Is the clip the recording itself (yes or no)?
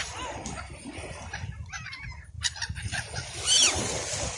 yes